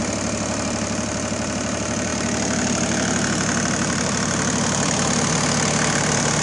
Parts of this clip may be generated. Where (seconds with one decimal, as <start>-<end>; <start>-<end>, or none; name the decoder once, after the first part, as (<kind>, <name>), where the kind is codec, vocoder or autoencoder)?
0.0-6.4 (vocoder, BigVGAN v2)

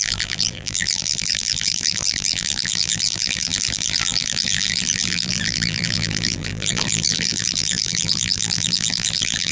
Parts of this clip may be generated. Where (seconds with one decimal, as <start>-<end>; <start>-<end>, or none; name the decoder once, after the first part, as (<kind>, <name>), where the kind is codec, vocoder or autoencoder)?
0.0-9.5 (vocoder, BigVGAN v2)

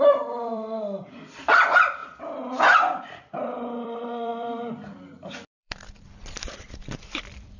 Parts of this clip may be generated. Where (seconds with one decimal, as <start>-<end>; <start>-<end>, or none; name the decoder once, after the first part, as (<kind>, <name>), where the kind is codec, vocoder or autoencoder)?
0.0-7.6 (vocoder, BigVGAN v2)

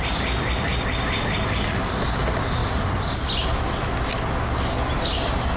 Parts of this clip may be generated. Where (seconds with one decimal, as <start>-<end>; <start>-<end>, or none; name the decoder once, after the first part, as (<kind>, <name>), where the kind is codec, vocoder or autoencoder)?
0.7-2.2 (vocoder, BigVGAN v2); 2.6-3.2

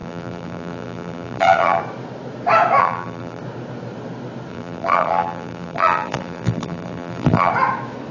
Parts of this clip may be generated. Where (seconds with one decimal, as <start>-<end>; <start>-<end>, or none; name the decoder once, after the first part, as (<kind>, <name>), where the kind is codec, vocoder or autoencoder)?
0.0-1.8 (vocoder, BigVGAN v2); 2.8-3.4; 4.5-7.5

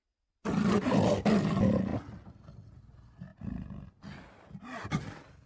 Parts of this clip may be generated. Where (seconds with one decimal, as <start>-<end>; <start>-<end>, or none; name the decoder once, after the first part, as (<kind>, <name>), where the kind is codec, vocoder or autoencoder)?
none

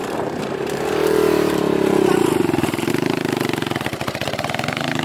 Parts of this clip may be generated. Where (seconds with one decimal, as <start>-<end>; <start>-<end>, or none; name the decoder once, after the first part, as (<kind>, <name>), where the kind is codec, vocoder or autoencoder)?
0.0-5.0 (vocoder, BigVGAN v2)

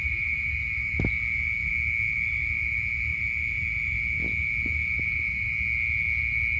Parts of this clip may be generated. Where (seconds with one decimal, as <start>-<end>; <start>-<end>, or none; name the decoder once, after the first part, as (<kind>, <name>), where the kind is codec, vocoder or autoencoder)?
none